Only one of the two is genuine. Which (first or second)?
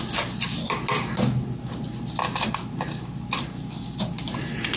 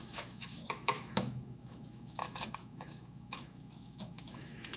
first